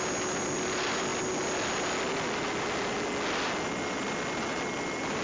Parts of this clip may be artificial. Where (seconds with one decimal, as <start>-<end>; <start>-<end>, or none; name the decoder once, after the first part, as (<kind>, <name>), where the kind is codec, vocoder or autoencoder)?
none